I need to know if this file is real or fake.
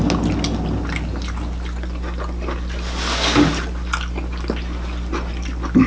real